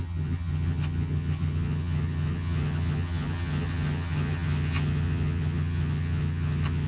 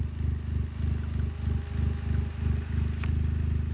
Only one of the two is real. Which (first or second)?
second